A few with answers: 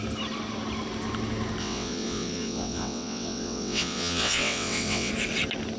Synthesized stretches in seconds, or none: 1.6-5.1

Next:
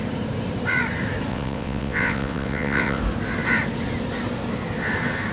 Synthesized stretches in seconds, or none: 1.3-3.0

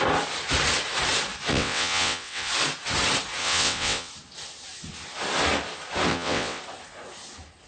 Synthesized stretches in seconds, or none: 1.5-2.5; 3.4-4.1; 6.1-6.6

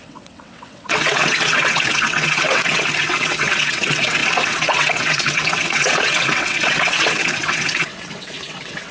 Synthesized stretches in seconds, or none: 0.0-8.9

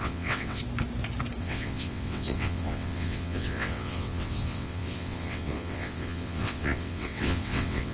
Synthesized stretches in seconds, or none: 0.0-0.6; 1.4-7.9

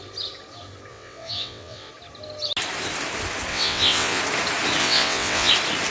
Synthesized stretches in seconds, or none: 0.9-1.9; 3.5-4.2; 4.8-5.5

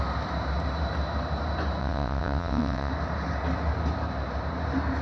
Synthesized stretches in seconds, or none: 1.8-2.9